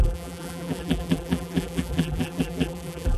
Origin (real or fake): fake